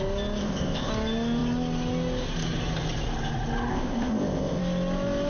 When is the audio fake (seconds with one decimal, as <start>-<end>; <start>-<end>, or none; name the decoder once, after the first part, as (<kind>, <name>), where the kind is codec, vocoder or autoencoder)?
0.4-0.9 (codec, ZipCodec); 3.7-4.6